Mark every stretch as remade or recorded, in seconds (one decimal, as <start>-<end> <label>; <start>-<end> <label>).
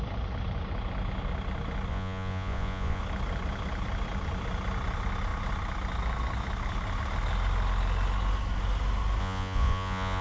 0.0-1.9 recorded; 1.9-3.0 remade; 3.0-9.2 recorded; 9.2-10.2 remade